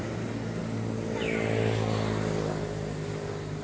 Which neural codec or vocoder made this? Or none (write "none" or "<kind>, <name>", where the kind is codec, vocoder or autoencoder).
none